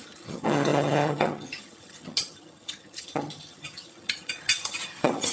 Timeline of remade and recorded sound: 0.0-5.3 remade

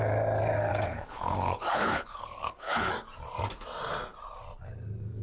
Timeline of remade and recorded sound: 0.0-0.7 recorded; 0.7-2.9 remade; 2.9-5.2 recorded

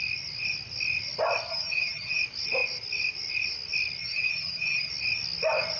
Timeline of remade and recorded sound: 0.0-1.5 recorded; 1.5-2.2 remade; 2.2-4.0 recorded; 4.0-4.9 remade; 4.9-5.8 recorded